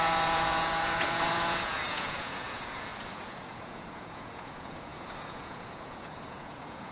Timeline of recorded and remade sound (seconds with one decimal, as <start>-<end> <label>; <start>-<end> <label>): 0.0-6.9 remade